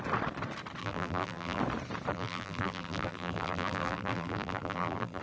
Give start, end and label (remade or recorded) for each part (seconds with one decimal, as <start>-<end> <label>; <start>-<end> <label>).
0.0-0.8 recorded; 0.8-1.6 remade; 1.6-2.1 recorded; 2.1-5.2 remade